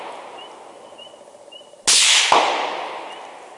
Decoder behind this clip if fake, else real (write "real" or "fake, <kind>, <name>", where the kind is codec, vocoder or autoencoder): real